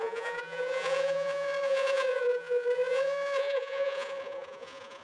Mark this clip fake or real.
fake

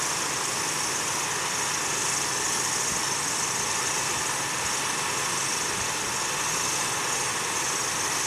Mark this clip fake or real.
real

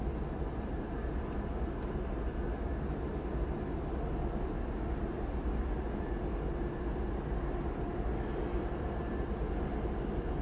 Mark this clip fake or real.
real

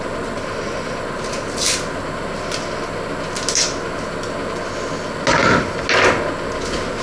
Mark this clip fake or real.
real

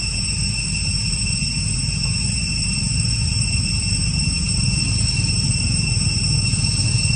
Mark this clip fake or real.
fake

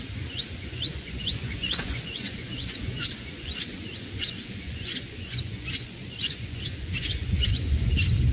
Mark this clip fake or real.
fake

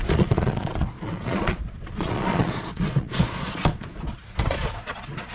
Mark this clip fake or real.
fake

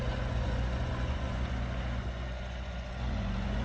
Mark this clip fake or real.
fake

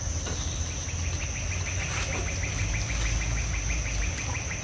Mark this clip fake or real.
real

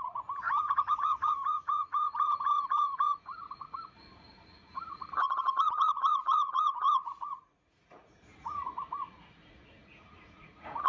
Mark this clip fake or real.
fake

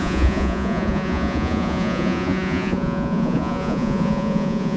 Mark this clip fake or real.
fake